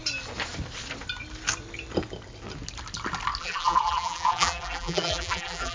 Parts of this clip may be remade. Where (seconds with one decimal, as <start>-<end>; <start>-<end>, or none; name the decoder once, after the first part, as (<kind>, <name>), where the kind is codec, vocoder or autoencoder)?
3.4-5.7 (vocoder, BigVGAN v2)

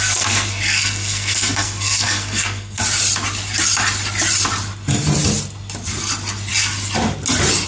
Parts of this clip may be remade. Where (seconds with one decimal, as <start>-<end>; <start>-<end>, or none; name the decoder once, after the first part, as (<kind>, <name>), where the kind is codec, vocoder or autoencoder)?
0.0-2.8 (codec, SNAC)

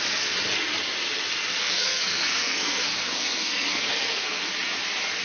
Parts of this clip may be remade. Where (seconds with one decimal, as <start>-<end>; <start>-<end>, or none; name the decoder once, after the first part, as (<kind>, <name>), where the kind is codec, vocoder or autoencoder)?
1.6-4.5 (codec, SNAC)

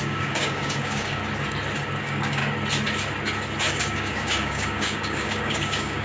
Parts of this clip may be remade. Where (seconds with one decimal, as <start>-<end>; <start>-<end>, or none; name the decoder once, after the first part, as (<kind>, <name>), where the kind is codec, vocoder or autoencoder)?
0.0-1.2 (codec, DAC); 2.0-2.4; 3.7-6.0

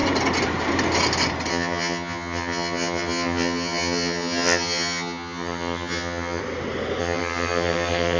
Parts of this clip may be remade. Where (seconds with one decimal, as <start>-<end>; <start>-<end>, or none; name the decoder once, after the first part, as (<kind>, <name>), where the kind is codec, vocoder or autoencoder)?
1.5-6.4 (vocoder, HiFi-GAN); 7.0-8.2

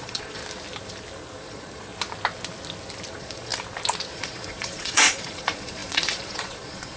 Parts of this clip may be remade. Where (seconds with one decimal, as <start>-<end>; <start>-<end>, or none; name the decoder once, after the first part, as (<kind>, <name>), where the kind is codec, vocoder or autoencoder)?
0.0-0.4 (vocoder, Vocos); 1.4-1.9; 3.1-3.5; 4.1-7.0

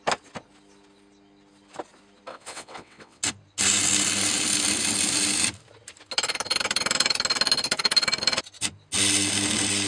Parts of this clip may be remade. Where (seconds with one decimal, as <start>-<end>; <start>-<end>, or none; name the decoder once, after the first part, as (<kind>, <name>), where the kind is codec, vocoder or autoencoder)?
2.3-3.2 (vocoder, WaveNeXt)

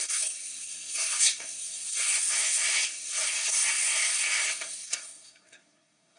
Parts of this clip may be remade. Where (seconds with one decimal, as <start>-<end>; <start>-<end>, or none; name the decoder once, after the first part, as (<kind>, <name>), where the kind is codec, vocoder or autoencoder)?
0.0-6.2 (codec, SNAC)